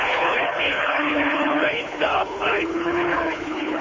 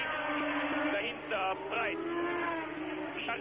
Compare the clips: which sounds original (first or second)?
second